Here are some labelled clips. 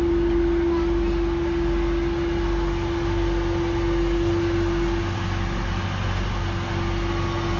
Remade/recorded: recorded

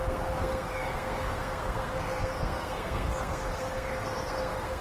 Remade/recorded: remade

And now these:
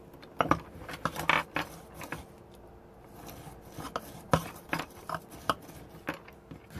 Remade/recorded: recorded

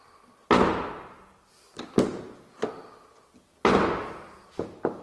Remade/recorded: recorded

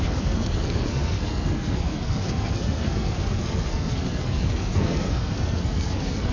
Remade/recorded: remade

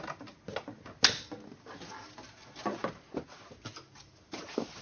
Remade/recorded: recorded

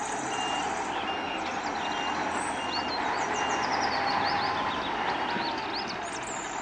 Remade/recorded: recorded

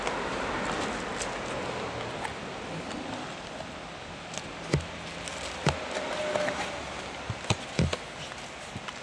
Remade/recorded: recorded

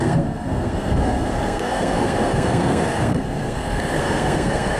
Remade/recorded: remade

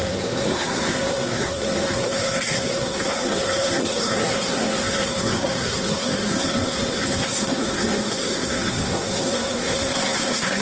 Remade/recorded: remade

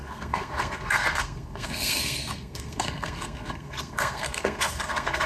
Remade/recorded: remade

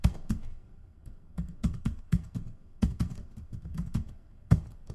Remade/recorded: remade